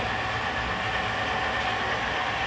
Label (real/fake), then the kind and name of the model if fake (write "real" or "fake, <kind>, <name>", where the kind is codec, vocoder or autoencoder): real